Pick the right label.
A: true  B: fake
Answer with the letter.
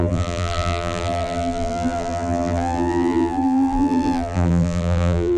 B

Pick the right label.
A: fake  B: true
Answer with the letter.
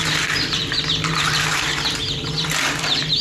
A